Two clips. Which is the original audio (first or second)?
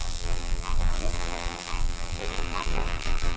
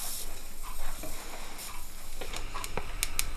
second